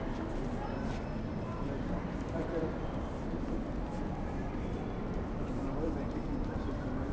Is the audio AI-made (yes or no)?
yes